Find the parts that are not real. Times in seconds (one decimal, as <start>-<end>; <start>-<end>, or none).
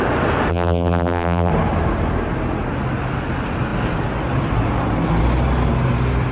0.5-1.5